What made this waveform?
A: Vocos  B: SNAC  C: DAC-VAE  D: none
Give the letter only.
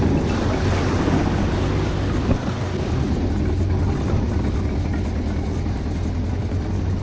D